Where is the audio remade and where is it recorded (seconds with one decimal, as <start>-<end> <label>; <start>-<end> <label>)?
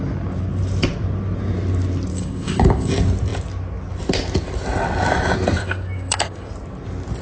0.0-2.1 recorded; 2.1-2.9 remade; 2.9-5.6 recorded; 5.6-6.5 remade; 6.5-7.2 recorded